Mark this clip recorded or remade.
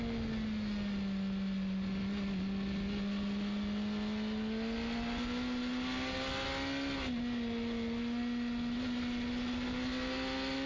recorded